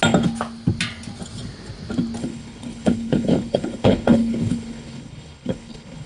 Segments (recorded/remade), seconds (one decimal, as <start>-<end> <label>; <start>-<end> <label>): 0.0-2.2 recorded; 2.2-6.1 remade